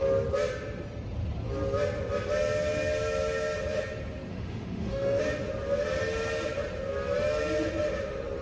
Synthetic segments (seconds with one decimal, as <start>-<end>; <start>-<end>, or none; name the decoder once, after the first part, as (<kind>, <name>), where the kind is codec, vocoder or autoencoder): 4.3-5.2 (autoencoder, DAC-VAE)